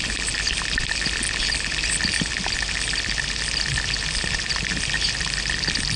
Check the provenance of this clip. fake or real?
fake